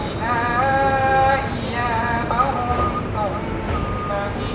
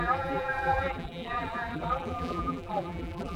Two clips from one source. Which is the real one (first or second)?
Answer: first